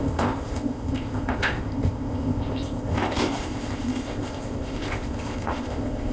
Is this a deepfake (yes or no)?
yes